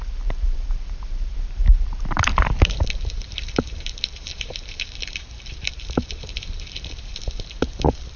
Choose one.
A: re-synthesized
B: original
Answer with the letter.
A